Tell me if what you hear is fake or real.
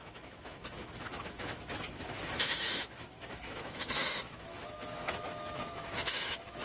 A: fake